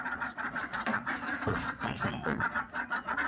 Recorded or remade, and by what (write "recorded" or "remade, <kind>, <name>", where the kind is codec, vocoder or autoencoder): remade, vocoder, Vocos